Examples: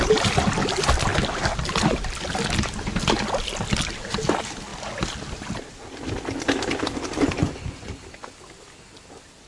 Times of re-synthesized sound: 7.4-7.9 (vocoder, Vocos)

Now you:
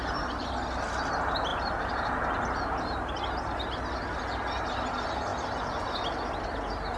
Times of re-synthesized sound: none

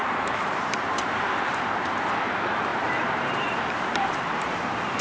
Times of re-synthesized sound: 0.0-5.0 (vocoder, BigVGAN v2)